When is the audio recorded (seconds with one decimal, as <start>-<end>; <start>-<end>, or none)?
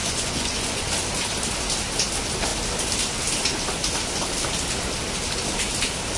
0.9-6.2